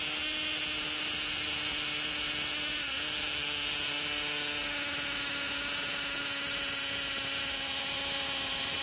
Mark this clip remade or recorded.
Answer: recorded